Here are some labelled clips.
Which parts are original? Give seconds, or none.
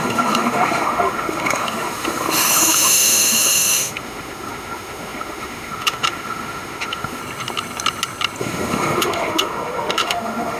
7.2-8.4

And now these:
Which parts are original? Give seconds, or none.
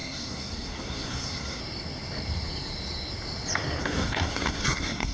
1.6-3.8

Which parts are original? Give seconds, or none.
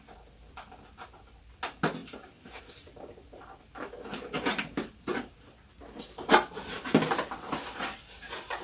0.0-2.0; 2.6-5.1; 5.8-8.6